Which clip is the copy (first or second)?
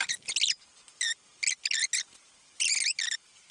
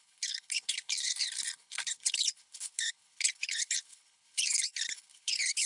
second